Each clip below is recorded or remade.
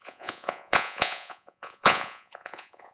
remade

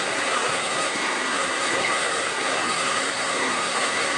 remade